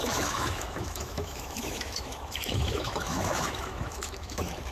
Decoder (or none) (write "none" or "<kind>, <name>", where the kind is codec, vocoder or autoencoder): autoencoder, DAC-VAE